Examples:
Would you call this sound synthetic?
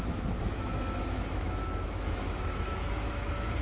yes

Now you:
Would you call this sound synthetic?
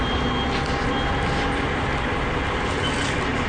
no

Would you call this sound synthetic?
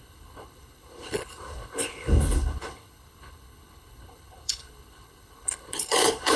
yes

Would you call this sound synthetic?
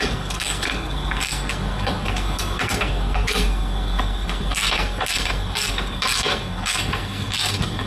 yes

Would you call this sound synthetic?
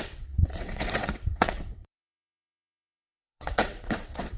yes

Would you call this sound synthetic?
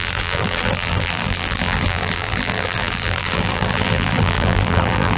yes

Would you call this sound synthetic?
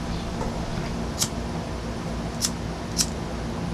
no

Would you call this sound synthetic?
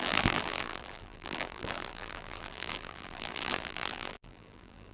yes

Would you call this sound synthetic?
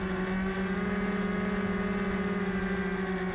no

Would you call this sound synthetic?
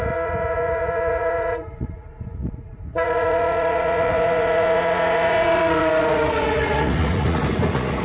yes